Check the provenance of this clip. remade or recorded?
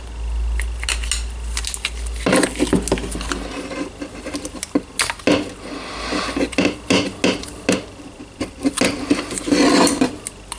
recorded